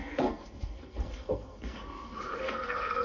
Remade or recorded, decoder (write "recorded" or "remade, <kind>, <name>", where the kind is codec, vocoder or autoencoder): remade, codec, SNAC